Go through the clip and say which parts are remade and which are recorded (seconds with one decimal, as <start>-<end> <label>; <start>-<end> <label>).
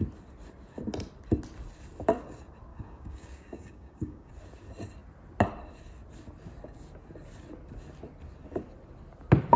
0.0-2.7 recorded; 2.7-4.3 remade; 4.3-9.6 recorded